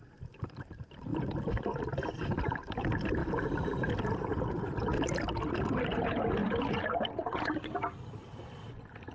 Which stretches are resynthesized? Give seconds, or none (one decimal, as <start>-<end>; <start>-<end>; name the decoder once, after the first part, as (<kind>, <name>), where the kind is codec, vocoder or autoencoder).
none